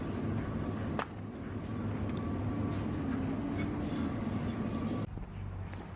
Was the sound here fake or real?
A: real